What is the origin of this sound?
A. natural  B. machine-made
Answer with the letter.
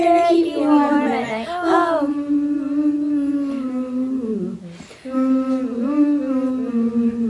A